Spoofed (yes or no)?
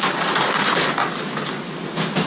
no